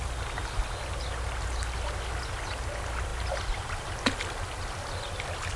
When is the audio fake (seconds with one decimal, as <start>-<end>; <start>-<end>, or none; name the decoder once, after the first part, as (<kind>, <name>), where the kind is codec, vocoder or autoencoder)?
none